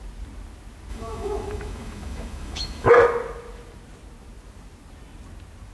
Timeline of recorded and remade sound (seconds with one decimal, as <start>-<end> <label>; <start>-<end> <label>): 0.0-0.9 recorded; 0.9-2.9 remade; 2.9-5.7 recorded